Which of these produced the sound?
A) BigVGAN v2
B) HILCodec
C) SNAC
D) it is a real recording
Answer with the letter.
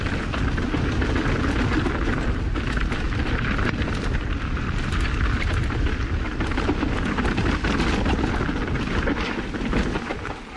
D